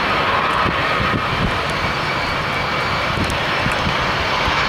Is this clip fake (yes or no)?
no